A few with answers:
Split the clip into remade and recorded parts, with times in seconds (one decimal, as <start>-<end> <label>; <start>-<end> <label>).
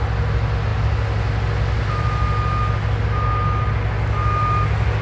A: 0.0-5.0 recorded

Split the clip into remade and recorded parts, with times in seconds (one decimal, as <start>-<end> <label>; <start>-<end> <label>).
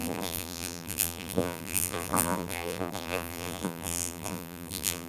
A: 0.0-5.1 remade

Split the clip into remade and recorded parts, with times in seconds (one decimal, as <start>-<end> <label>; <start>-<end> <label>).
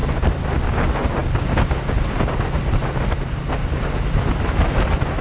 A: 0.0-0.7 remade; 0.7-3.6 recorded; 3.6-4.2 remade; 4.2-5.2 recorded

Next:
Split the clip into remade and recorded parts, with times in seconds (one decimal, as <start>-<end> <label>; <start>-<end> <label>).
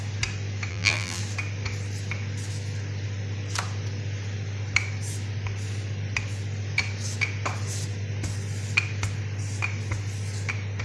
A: 0.0-0.7 recorded; 0.7-1.2 remade; 1.2-10.8 recorded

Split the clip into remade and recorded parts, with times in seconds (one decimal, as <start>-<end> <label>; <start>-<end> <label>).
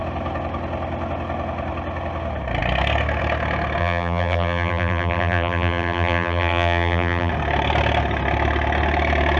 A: 0.0-3.8 recorded; 3.8-7.3 remade; 7.3-9.4 recorded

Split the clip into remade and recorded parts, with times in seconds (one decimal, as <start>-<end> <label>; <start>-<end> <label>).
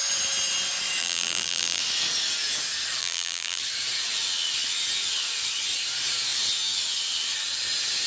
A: 0.0-1.0 recorded; 1.0-1.8 remade; 1.8-3.0 recorded; 3.0-3.6 remade; 3.6-8.1 recorded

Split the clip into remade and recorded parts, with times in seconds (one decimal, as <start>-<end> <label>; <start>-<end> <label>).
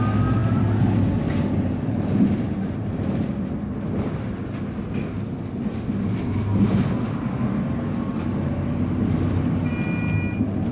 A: 0.0-0.4 recorded; 0.4-4.0 remade; 4.0-6.5 recorded; 6.5-10.0 remade; 10.0-10.7 recorded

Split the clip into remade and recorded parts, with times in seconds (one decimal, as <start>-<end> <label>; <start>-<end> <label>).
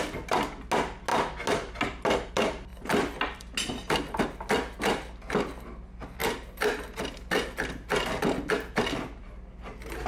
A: 0.0-10.1 recorded